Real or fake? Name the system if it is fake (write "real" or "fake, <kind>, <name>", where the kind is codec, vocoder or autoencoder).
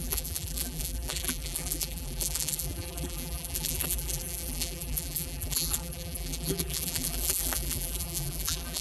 fake, vocoder, BigVGAN v2